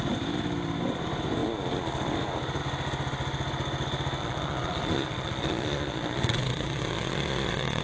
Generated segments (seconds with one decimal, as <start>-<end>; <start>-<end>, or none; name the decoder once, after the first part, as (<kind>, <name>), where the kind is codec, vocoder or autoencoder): 4.2-7.8 (vocoder, Vocos)